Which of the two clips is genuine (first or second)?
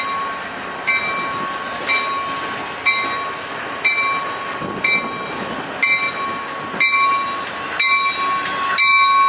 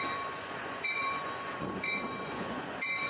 first